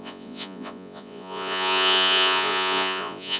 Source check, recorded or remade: remade